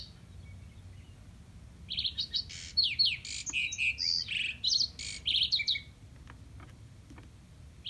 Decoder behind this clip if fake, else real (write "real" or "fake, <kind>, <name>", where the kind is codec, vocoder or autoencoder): real